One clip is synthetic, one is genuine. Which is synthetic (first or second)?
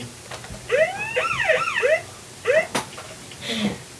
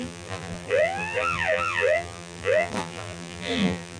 second